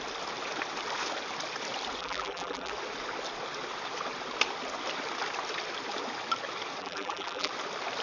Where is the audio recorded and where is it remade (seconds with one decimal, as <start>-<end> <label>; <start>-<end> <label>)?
0.0-2.0 recorded; 2.0-2.7 remade; 2.7-6.8 recorded; 6.8-7.5 remade; 7.5-8.0 recorded